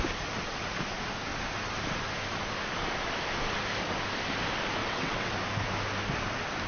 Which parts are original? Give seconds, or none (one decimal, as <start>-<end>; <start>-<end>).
0.0-4.8; 5.3-6.7